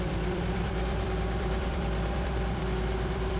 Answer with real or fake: fake